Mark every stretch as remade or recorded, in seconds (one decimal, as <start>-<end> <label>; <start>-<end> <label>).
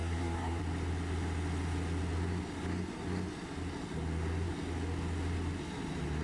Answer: 0.0-0.6 remade; 0.6-6.2 recorded